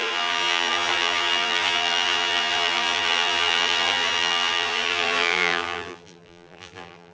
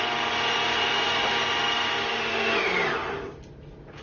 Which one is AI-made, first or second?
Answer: first